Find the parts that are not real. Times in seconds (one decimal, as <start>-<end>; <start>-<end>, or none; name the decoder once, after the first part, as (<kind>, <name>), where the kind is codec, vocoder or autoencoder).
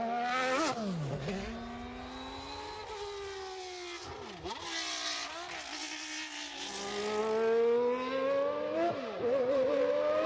none